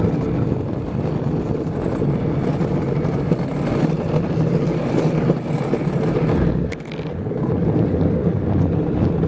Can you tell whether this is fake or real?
real